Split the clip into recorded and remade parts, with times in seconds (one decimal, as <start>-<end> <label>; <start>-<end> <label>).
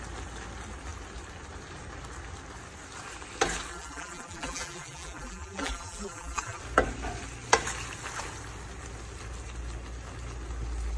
0.0-3.7 recorded; 3.7-6.6 remade; 6.6-11.0 recorded